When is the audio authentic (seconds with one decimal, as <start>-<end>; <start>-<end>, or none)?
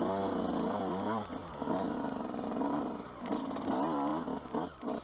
0.0-1.4; 3.3-5.0